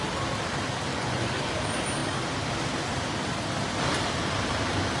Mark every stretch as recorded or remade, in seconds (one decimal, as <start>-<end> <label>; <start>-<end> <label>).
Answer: 0.0-0.9 recorded; 0.9-1.5 remade; 1.5-5.0 recorded